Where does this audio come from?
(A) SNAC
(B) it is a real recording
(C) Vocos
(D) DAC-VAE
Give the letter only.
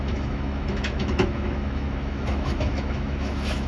D